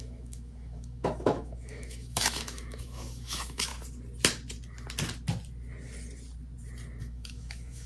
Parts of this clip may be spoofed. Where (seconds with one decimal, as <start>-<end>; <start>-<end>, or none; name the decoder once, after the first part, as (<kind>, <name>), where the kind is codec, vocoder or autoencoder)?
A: 0.0-3.7 (autoencoder, DAC-VAE); 7.0-7.9